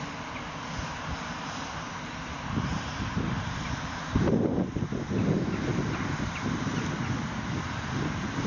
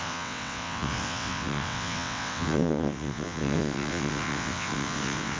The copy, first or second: second